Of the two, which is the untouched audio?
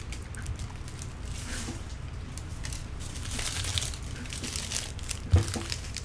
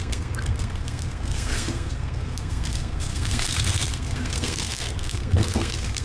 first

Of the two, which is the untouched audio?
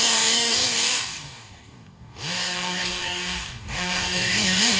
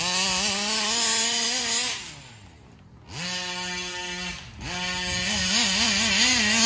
second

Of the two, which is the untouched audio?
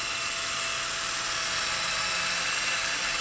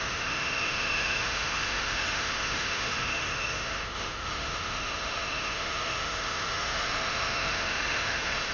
first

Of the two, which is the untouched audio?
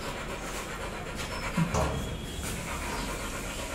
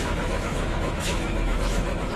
first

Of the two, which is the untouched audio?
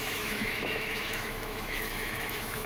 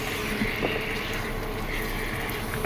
second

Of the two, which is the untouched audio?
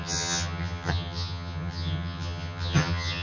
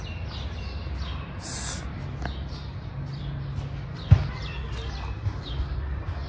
second